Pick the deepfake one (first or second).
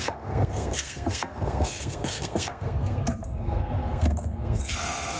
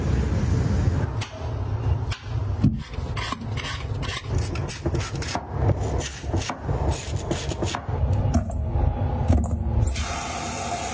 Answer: first